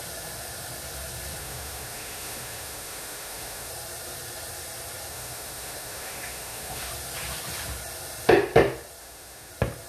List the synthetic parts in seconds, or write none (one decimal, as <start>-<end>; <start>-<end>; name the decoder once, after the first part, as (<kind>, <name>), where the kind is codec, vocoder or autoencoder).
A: 1.4-3.7 (autoencoder, DAC-VAE); 5.1-6.9; 9.0-9.5